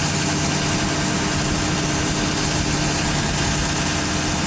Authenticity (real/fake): real